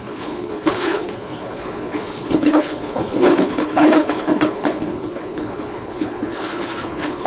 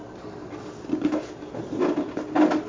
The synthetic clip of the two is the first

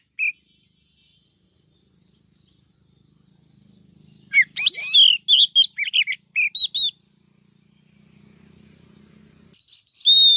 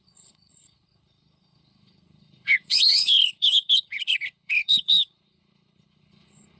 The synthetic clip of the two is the second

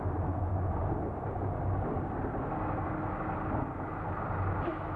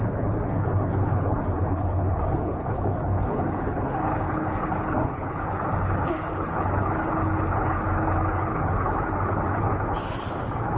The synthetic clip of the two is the second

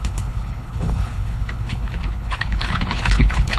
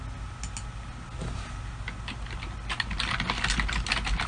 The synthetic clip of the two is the first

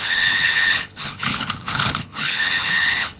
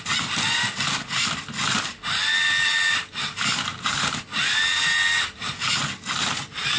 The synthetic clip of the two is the first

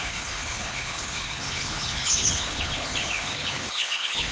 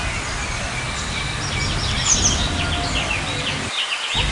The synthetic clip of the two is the first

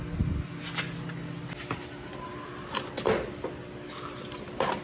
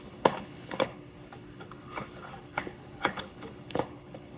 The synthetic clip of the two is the second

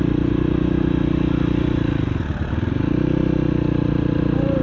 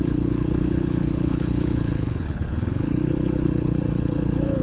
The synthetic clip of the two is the second